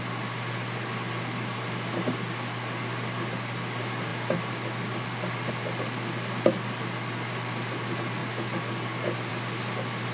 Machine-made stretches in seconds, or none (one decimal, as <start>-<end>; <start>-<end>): none